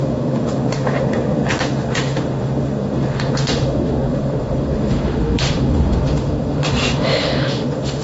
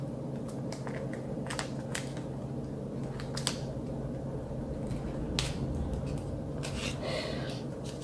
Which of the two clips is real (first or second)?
second